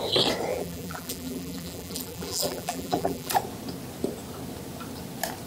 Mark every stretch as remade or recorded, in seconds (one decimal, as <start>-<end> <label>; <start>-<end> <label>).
0.0-0.5 recorded; 0.5-3.3 remade; 3.3-5.5 recorded